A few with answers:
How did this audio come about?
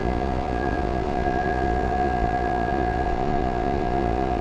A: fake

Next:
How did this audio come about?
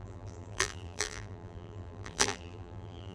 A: fake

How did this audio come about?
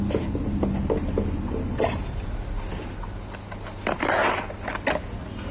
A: real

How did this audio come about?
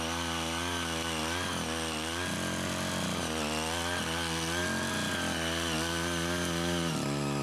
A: real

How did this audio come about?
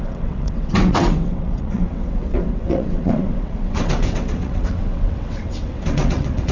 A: fake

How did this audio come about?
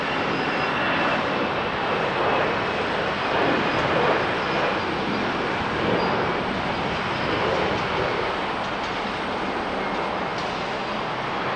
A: real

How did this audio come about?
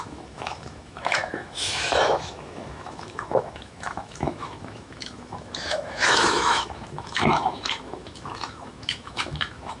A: fake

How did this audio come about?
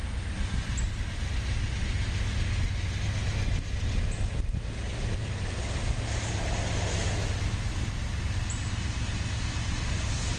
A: real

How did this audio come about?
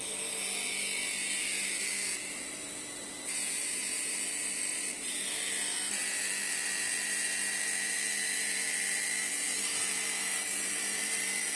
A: fake